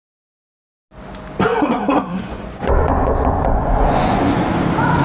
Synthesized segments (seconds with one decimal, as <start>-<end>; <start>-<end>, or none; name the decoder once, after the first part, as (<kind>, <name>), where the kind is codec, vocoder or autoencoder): 1.5-4.5 (vocoder, Vocos)